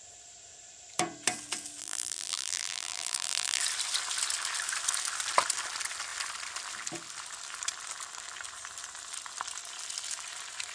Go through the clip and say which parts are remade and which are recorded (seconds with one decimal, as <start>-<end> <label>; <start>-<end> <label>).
0.0-1.8 recorded; 1.8-3.6 remade; 3.6-10.7 recorded